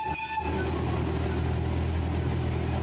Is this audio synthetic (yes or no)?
no